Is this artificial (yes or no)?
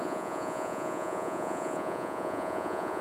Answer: yes